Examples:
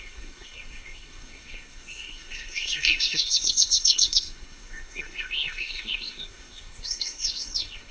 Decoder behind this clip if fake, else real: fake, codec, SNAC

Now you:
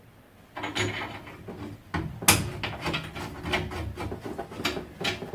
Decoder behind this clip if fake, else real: real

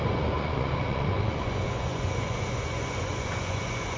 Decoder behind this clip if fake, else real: fake, vocoder, Vocos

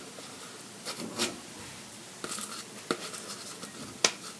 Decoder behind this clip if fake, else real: real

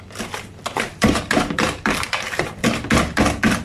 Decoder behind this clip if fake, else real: real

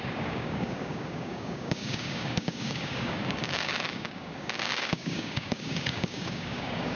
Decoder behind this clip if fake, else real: fake, codec, DAC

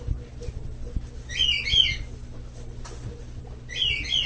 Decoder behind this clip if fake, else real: real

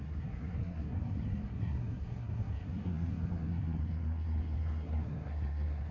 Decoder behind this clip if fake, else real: fake, codec, SNAC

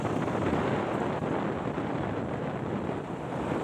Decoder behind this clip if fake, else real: fake, vocoder, BigVGAN v2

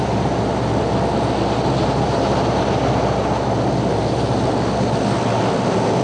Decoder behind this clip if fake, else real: real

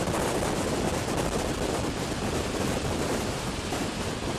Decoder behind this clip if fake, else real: real